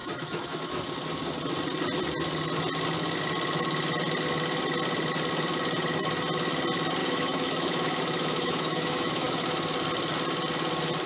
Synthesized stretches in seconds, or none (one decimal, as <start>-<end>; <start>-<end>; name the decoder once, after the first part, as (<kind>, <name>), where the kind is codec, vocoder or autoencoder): 0.0-0.8 (autoencoder, DAC-VAE); 7.0-9.4